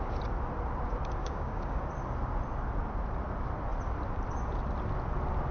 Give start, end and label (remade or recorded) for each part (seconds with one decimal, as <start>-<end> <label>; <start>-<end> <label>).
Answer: 0.0-1.2 recorded; 1.2-1.8 remade; 1.8-5.5 recorded